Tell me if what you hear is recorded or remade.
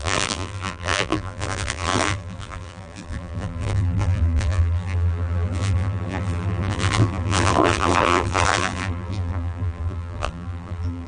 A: remade